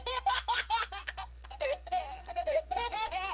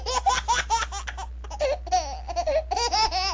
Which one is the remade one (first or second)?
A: first